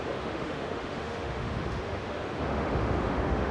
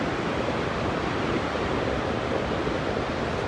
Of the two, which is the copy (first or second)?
first